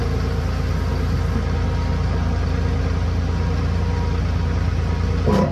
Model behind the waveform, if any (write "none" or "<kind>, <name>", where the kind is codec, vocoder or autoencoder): none